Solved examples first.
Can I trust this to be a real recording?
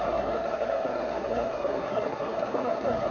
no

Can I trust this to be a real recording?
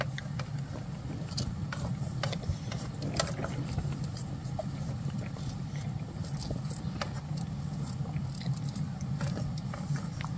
yes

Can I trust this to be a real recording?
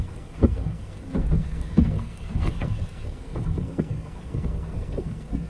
no